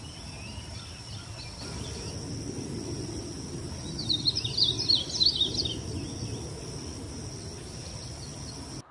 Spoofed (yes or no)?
no